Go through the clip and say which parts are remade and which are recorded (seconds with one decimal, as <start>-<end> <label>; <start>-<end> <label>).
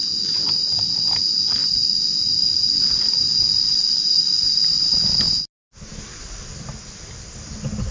0.0-1.6 recorded; 1.6-5.2 remade; 5.2-5.9 recorded; 5.9-7.5 remade; 7.5-7.9 recorded